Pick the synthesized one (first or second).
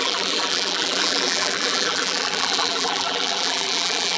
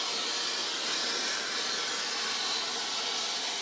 first